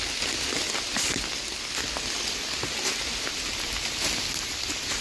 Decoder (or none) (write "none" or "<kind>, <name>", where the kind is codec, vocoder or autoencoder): none